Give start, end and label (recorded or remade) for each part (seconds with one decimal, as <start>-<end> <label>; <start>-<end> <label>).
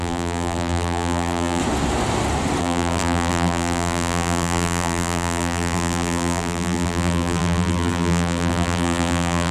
0.0-1.6 remade; 1.6-2.6 recorded; 2.6-9.5 remade